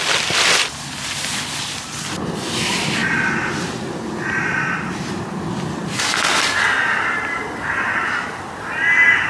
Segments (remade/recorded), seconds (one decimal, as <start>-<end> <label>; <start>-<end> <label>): 0.0-9.3 recorded